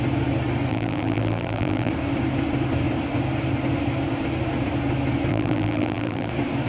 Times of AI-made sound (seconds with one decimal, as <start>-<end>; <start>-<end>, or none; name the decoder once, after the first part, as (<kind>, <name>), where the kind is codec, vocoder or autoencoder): 0.7-1.9 (vocoder, BigVGAN v2); 5.3-6.3